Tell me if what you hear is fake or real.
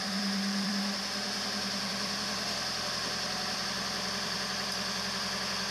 fake